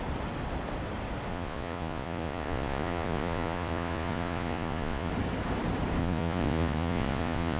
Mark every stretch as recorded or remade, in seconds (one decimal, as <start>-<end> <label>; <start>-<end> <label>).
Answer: 0.0-1.3 recorded; 1.3-5.1 remade; 5.1-6.0 recorded; 6.0-7.6 remade